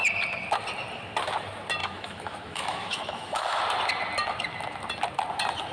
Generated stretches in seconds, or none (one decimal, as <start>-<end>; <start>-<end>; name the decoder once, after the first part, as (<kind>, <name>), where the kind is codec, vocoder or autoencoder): 1.8-3.6 (autoencoder, DAC-VAE)